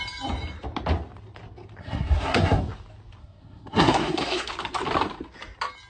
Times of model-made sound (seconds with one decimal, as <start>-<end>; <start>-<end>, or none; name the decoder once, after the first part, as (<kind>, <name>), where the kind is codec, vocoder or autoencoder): 1.8-2.6 (codec, SNAC); 3.2-4.5